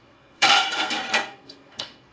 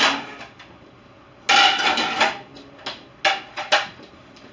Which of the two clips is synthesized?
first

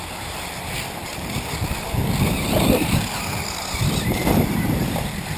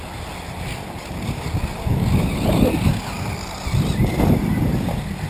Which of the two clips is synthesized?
first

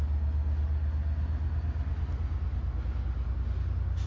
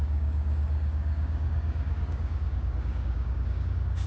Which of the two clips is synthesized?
second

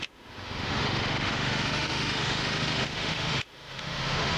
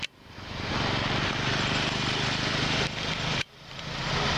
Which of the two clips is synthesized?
first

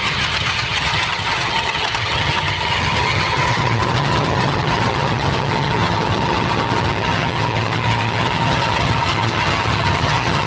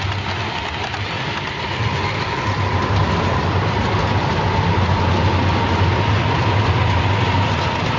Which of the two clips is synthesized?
first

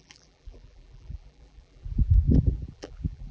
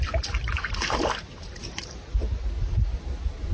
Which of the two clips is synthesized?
first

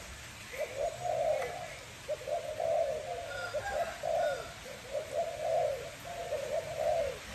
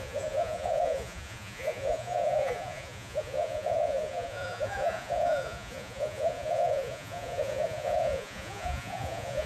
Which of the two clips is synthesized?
second